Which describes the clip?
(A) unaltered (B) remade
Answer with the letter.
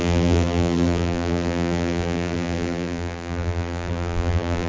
B